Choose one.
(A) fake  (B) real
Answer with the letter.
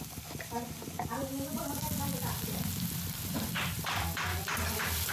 A